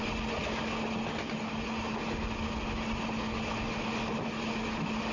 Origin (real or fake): real